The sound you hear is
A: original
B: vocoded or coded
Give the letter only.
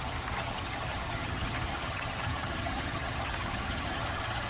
B